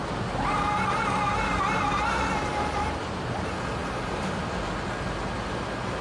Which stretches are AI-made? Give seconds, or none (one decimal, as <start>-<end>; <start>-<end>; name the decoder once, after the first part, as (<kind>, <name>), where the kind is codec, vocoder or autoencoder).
3.8-4.3 (vocoder, BigVGAN v2)